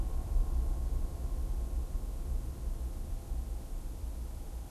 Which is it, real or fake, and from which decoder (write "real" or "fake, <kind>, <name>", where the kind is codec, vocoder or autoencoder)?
fake, vocoder, BigVGAN v2